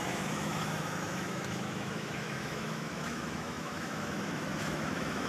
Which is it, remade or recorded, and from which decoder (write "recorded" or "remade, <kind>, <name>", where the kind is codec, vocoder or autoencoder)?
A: remade, autoencoder, DAC-VAE